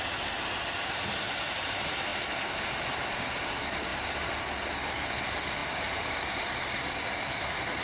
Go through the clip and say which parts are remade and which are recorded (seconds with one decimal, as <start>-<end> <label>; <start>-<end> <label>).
0.0-3.9 recorded; 3.9-4.4 remade; 4.4-5.6 recorded; 5.6-6.4 remade; 6.4-7.8 recorded

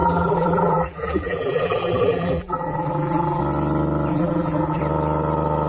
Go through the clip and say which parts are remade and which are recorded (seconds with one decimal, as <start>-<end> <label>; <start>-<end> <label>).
0.0-3.4 remade; 3.4-4.1 recorded; 4.1-4.8 remade; 4.8-5.7 recorded

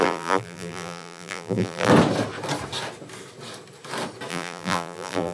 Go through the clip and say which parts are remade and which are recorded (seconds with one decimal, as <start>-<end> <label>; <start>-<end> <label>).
0.0-1.9 remade; 1.9-4.3 recorded; 4.3-5.3 remade

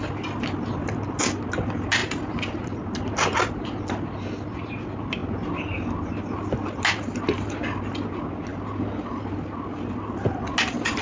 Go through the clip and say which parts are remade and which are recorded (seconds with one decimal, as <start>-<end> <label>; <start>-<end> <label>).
0.0-11.0 recorded

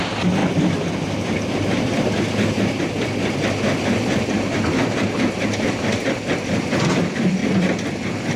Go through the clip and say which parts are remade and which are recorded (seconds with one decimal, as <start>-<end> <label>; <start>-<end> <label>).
0.0-7.4 remade; 7.4-7.9 recorded; 7.9-8.4 remade

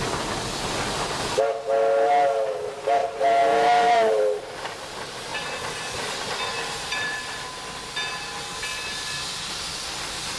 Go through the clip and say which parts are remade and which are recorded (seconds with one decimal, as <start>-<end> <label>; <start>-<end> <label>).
0.0-3.0 recorded; 3.0-4.2 remade; 4.2-5.3 recorded; 5.3-6.1 remade; 6.1-6.5 recorded; 6.5-7.6 remade; 7.6-10.4 recorded

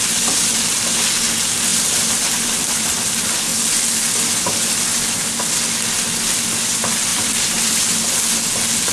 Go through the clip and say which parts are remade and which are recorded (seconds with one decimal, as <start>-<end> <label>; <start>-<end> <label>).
0.0-1.7 recorded; 1.7-3.1 remade; 3.1-7.1 recorded; 7.1-7.8 remade; 7.8-8.9 recorded

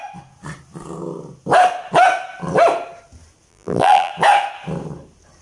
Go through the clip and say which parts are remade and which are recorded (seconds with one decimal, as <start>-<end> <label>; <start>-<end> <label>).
0.0-3.5 recorded; 3.5-4.1 remade; 4.1-5.4 recorded